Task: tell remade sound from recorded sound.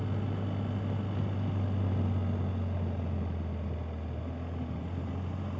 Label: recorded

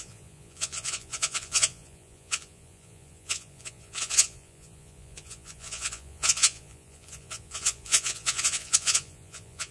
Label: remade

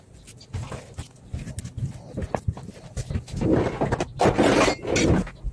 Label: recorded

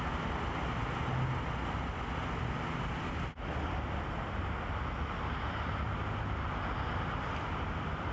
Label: recorded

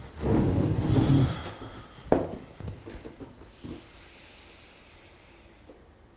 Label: recorded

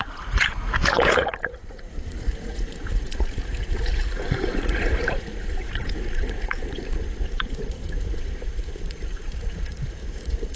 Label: remade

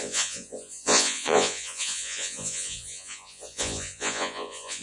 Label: remade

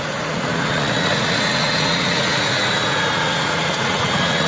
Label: remade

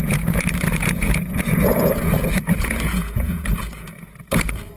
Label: remade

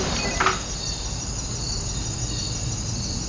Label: recorded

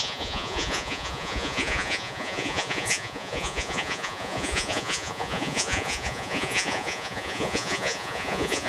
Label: remade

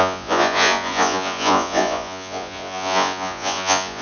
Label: remade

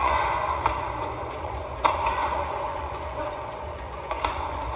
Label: remade